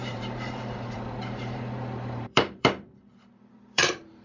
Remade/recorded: remade